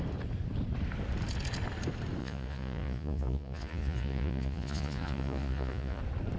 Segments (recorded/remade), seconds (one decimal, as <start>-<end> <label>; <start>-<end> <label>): 0.0-2.2 recorded; 2.2-6.0 remade; 6.0-6.4 recorded